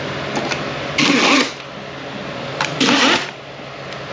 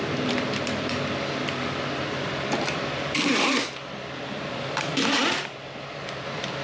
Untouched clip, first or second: first